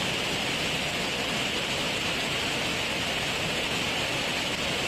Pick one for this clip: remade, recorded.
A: recorded